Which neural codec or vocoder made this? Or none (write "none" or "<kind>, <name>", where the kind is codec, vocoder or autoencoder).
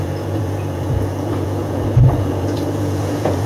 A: vocoder, Vocos